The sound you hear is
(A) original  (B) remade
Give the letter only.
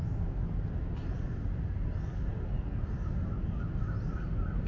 A